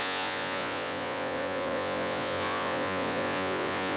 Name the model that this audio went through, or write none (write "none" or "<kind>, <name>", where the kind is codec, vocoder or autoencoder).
vocoder, Vocos